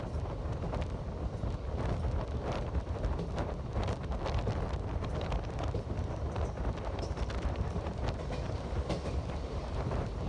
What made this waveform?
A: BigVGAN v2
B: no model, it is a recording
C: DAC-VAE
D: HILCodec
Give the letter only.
A